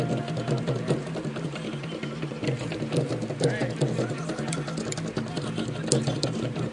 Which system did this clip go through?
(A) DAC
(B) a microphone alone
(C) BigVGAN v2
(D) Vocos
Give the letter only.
B